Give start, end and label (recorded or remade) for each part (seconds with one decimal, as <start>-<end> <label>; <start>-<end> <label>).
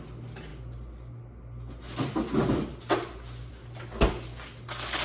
0.0-5.0 recorded